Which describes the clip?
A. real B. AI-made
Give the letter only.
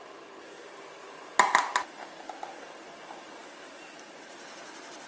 A